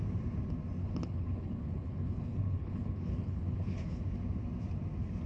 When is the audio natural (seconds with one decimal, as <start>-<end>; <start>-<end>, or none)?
0.0-0.8; 4.0-5.3